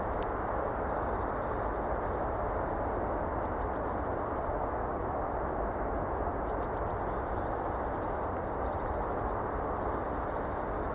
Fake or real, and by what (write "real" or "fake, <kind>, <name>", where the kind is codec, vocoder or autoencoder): real